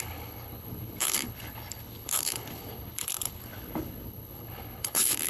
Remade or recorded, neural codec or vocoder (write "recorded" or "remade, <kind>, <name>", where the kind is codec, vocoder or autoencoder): remade, codec, HILCodec